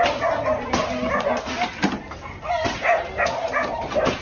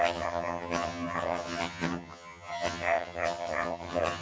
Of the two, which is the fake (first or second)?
second